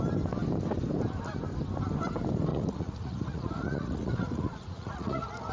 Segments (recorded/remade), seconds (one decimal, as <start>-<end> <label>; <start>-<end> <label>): 0.0-2.5 recorded; 2.5-5.5 remade